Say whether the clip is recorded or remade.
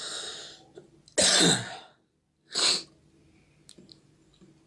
recorded